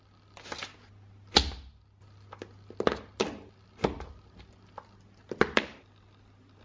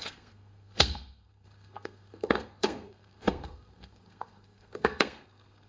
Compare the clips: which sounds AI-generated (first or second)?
second